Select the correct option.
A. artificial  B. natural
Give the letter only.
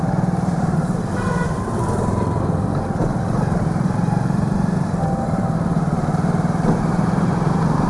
A